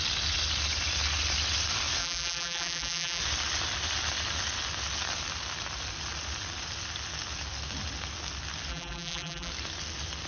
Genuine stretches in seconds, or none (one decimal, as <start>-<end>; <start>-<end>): 0.0-2.0; 3.2-8.7; 9.5-10.3